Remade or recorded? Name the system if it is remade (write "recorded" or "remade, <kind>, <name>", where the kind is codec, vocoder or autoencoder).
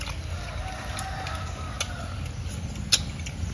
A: recorded